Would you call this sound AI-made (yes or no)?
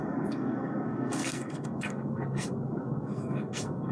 yes